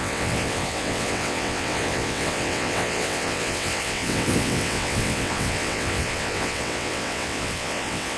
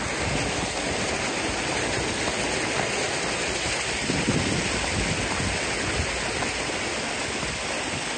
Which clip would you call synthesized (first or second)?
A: first